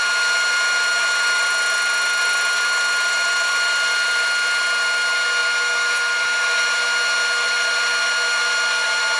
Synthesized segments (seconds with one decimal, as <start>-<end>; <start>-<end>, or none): none

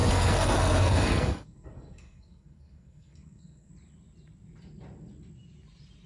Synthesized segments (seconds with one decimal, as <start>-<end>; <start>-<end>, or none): 0.0-3.7

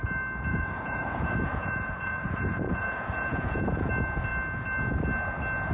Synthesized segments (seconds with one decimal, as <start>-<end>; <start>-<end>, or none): 0.5-3.9

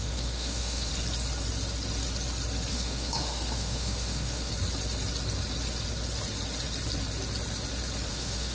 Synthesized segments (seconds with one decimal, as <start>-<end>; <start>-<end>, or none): 0.0-0.9; 2.7-4.5; 8.1-8.5

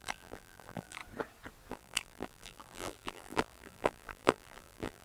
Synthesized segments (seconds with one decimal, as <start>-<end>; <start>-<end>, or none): 0.0-1.0; 1.7-5.0

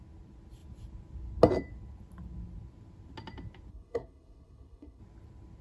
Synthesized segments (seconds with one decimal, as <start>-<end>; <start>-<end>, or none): 3.7-5.0

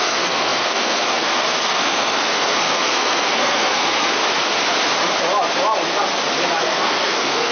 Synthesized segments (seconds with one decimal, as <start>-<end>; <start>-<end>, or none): 0.0-4.2; 6.6-7.5

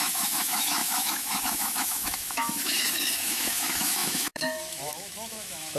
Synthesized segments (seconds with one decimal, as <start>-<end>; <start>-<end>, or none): 0.0-5.8